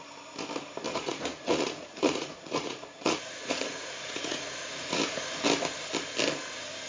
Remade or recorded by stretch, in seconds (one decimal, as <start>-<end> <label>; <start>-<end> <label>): 0.0-0.9 recorded; 0.9-5.0 remade; 5.0-6.9 recorded